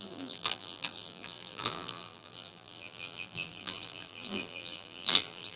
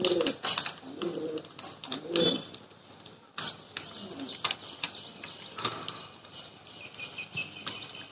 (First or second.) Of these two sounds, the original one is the second